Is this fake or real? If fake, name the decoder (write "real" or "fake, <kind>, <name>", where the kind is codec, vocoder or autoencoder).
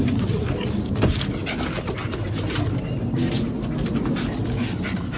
real